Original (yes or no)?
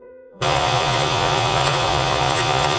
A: no